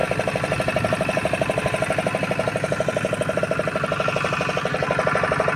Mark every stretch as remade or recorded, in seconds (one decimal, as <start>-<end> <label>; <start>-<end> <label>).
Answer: 0.0-5.6 recorded